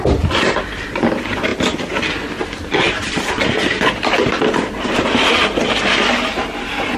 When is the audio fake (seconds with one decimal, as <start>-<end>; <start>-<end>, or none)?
none